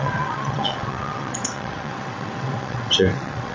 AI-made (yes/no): yes